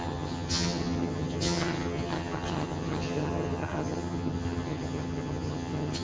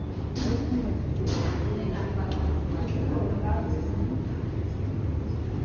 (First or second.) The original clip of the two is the second